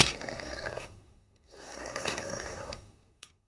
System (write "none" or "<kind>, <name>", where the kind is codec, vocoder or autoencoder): codec, SNAC